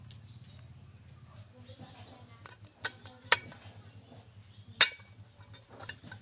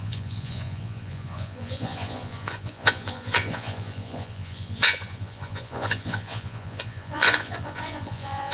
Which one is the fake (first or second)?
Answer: second